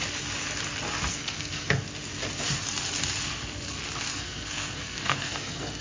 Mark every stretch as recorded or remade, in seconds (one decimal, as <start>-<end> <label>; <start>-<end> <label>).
0.0-1.1 recorded; 1.1-1.8 remade; 1.8-4.1 recorded; 4.1-5.8 remade